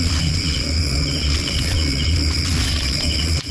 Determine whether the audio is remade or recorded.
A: remade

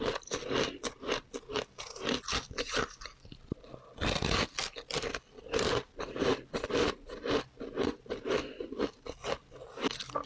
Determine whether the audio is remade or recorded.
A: recorded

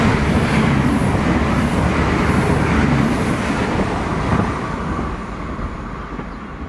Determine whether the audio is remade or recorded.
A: recorded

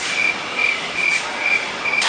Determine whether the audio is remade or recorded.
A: recorded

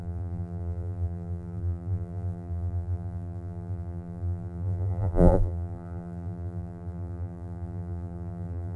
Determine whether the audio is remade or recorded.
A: remade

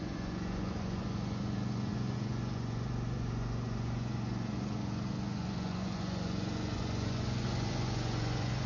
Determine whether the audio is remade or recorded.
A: remade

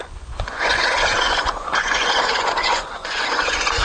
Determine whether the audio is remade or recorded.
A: remade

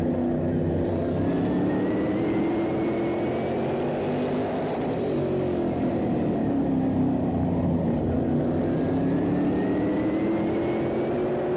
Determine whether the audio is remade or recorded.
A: recorded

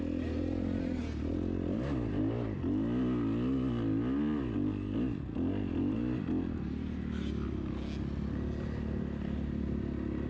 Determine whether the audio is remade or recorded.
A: recorded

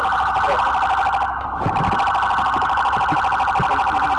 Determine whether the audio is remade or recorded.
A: recorded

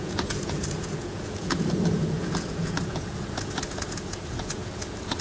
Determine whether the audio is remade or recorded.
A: remade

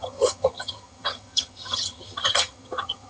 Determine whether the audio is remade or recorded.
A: remade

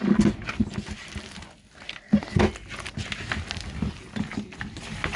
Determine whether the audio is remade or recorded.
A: recorded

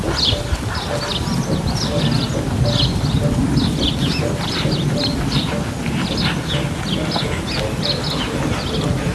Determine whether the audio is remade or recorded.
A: recorded